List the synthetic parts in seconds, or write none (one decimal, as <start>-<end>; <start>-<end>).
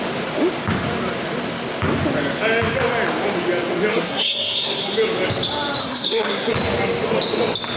3.9-4.8; 5.8-6.5